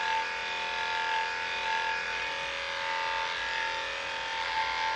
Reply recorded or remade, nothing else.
recorded